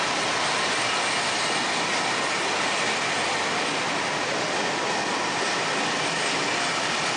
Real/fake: real